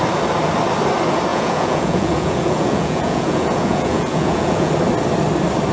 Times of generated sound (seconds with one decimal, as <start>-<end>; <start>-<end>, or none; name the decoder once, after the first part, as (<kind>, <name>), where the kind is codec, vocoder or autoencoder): 1.3-4.7 (vocoder, Vocos)